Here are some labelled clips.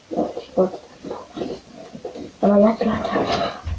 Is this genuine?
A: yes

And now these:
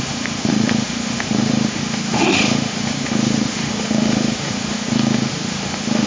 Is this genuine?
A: no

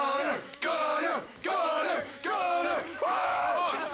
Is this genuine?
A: no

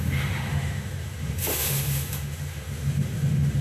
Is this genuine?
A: no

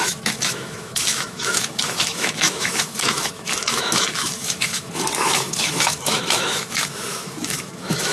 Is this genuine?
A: no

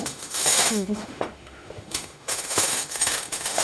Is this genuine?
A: no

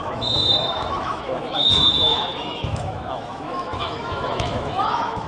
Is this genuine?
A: no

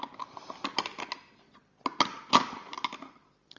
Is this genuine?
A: yes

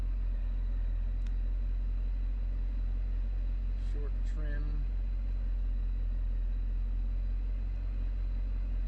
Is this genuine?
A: yes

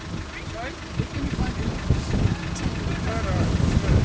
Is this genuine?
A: yes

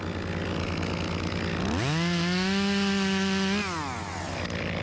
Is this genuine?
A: yes